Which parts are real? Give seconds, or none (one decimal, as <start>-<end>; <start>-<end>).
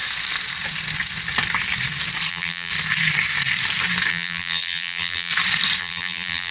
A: 0.0-2.3; 2.7-4.1; 5.3-5.8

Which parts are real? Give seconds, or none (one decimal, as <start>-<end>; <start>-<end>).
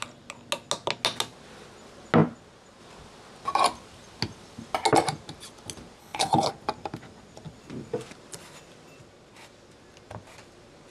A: 0.0-6.0; 6.5-10.9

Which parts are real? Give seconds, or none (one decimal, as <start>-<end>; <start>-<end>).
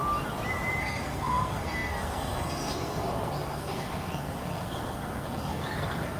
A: 0.0-0.8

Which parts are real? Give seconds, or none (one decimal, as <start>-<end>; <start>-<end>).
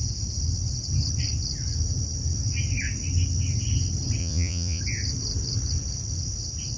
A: 0.0-4.2; 4.8-6.8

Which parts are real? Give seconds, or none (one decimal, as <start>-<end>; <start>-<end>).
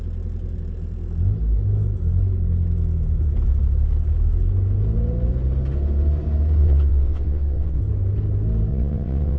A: 0.0-6.6; 7.8-8.7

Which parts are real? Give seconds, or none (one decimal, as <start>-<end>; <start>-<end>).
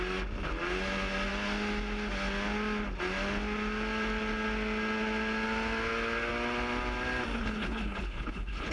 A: 0.0-7.4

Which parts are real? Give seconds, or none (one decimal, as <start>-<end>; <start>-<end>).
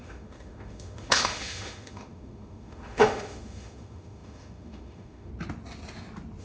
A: 5.3-6.4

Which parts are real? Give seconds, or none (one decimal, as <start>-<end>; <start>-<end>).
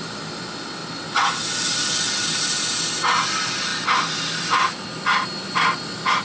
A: 0.0-6.2